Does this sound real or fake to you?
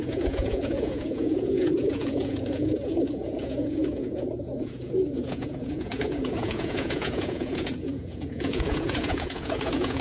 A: fake